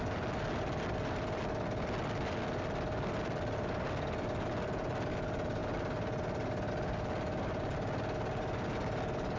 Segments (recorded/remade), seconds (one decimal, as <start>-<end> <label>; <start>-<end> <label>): 0.0-9.4 recorded